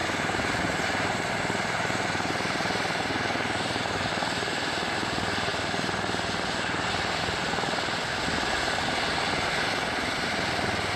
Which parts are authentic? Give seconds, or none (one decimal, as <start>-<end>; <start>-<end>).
4.1-11.0